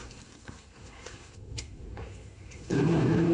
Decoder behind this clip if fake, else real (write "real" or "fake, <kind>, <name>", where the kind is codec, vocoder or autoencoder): fake, codec, SNAC